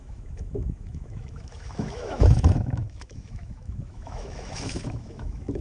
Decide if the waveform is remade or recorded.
remade